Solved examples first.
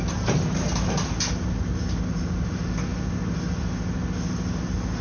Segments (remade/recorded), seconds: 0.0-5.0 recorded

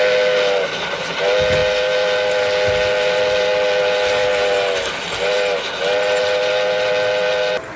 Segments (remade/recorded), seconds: 0.0-7.8 recorded

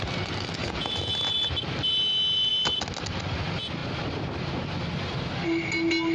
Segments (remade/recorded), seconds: 0.0-0.6 recorded; 0.6-1.1 remade; 1.1-6.1 recorded